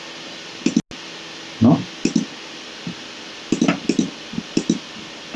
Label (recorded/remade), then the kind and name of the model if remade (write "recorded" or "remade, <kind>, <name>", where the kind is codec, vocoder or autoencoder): recorded